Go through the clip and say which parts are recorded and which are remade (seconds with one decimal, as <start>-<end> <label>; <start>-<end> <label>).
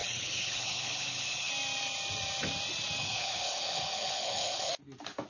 0.0-1.5 remade; 1.5-3.0 recorded; 3.0-4.7 remade; 4.7-5.3 recorded